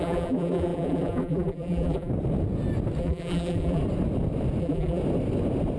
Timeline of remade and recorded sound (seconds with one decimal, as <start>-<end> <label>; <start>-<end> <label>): 0.0-2.1 remade; 2.1-3.0 recorded; 3.0-3.8 remade; 3.8-4.6 recorded; 4.6-5.0 remade; 5.0-5.8 recorded